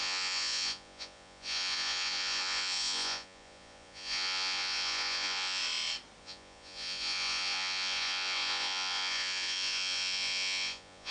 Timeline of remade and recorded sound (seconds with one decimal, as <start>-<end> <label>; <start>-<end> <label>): 0.0-5.6 remade; 5.6-6.2 recorded; 6.2-11.1 remade